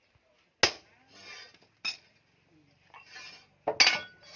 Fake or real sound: real